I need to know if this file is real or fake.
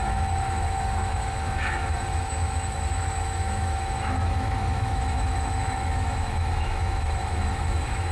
fake